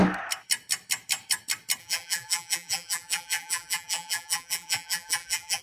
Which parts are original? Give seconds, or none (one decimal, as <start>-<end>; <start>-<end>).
0.0-1.8